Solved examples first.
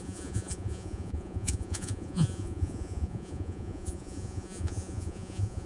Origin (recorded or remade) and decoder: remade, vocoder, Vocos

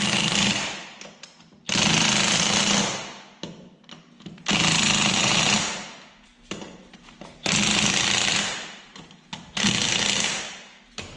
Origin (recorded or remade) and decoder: recorded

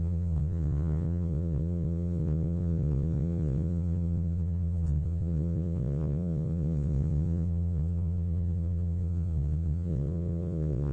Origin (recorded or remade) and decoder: remade, vocoder, Vocos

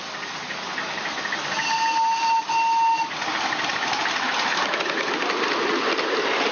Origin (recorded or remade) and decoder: recorded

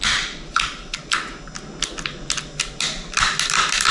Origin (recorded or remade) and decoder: recorded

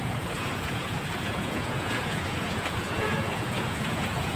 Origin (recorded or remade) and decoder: remade, vocoder, Vocos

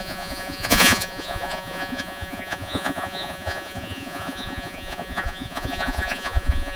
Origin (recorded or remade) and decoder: remade, vocoder, Vocos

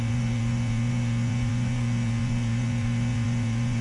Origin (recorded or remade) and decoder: remade, vocoder, Vocos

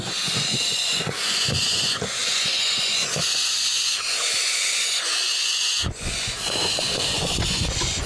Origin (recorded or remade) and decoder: remade, vocoder, Vocos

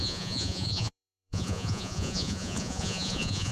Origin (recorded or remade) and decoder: remade, vocoder, Vocos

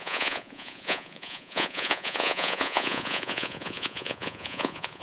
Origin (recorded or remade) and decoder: remade, vocoder, Vocos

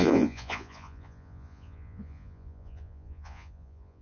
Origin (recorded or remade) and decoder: remade, vocoder, Vocos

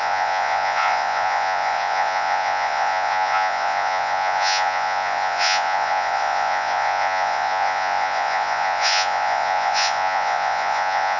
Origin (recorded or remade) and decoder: remade, vocoder, Vocos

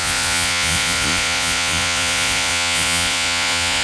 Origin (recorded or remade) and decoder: remade, vocoder, Vocos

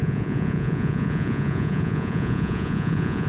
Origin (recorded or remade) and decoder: remade, vocoder, Vocos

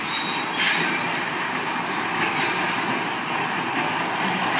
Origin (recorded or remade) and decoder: recorded